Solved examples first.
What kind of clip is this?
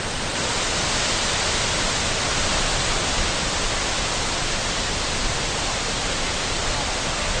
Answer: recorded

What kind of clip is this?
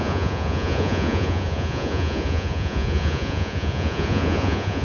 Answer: remade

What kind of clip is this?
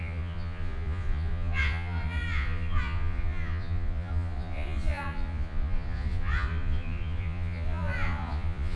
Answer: remade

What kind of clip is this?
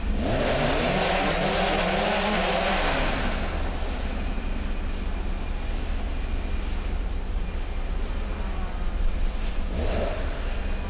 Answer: recorded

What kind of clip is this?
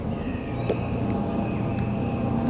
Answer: recorded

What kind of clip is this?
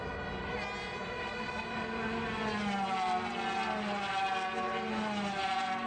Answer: recorded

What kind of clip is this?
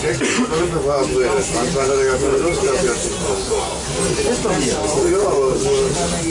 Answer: recorded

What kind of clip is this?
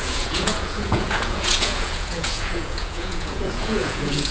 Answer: remade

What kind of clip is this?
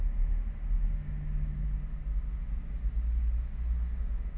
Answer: recorded